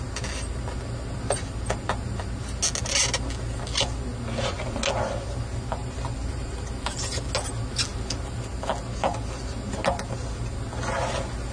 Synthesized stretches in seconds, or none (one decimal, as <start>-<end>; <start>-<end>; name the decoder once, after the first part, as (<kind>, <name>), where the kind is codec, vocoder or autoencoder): 5.8-6.7 (vocoder, BigVGAN v2)